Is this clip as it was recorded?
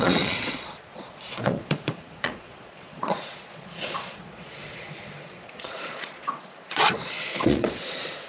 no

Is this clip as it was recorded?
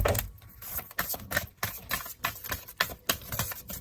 yes